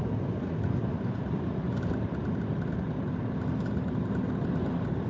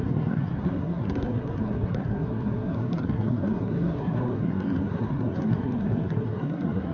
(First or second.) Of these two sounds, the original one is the first